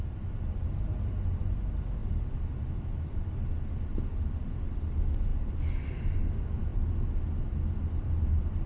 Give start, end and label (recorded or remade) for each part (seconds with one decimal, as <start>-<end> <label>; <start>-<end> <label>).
0.0-8.7 recorded